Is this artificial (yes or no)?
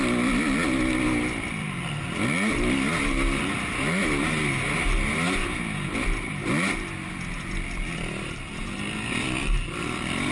no